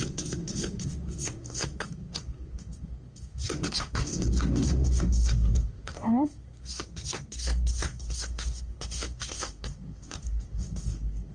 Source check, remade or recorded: remade